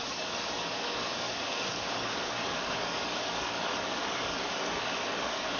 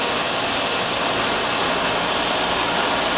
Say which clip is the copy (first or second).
first